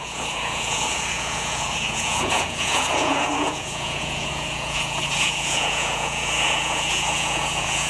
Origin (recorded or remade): remade